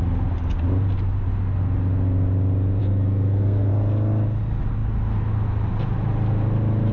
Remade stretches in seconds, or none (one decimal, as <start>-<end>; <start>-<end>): 2.8-3.7